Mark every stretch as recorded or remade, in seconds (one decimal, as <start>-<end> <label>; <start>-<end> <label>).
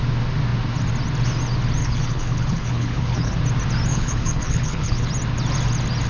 0.0-1.8 recorded; 1.8-3.4 remade; 3.4-3.9 recorded; 3.9-5.1 remade; 5.1-6.1 recorded